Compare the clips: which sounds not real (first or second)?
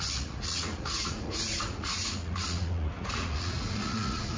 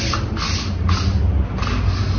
first